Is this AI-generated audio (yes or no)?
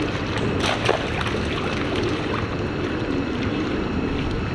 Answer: no